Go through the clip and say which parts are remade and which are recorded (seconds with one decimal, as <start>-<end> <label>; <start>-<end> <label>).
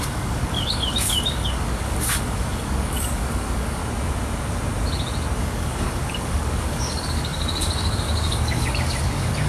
0.0-3.8 remade; 3.8-5.4 recorded; 5.4-9.5 remade